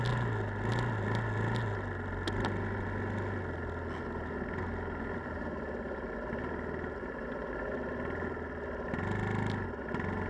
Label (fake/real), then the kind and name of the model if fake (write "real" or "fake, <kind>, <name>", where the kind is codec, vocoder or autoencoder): real